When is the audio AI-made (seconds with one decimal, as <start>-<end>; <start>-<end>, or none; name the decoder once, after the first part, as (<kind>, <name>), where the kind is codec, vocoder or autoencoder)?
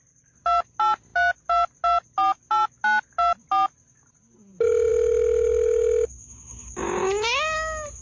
none